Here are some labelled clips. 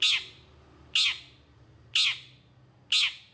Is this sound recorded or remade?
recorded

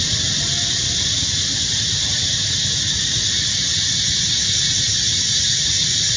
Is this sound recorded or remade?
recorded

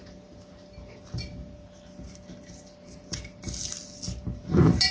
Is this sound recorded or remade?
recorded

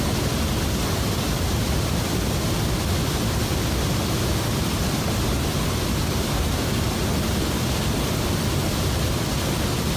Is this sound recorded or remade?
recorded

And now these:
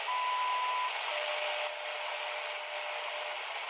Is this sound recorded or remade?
recorded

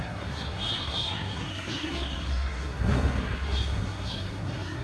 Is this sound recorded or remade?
remade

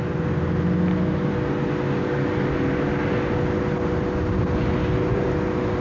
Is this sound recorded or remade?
recorded